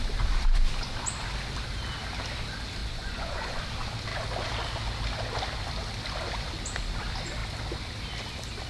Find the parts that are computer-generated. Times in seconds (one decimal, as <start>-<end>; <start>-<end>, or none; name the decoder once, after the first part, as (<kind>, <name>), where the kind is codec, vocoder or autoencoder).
2.8-3.6 (vocoder, Vocos)